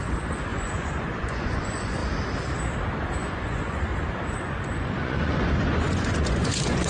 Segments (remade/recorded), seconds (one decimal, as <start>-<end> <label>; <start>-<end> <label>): 0.0-2.0 remade; 2.0-3.2 recorded; 3.2-3.9 remade; 3.9-4.4 recorded; 4.4-6.9 remade